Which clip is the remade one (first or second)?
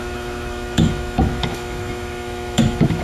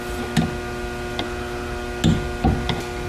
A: first